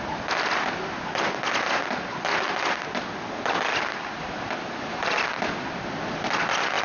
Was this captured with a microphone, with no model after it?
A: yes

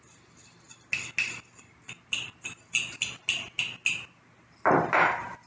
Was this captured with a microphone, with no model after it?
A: yes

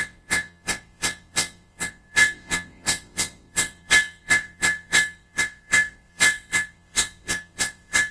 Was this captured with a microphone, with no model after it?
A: no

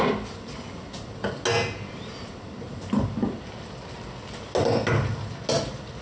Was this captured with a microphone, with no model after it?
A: yes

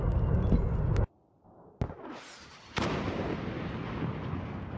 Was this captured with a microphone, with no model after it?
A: yes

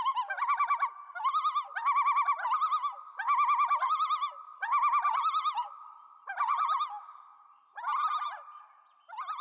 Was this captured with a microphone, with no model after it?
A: yes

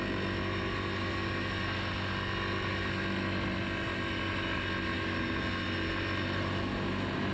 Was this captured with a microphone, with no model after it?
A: yes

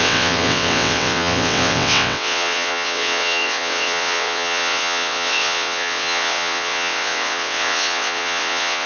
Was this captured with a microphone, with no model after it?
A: no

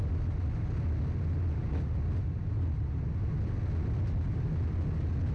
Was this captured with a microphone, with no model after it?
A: yes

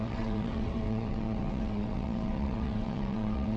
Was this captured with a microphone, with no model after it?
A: no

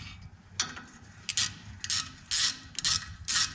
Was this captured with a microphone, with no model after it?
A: yes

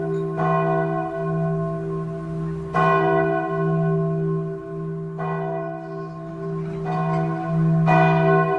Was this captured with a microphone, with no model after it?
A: yes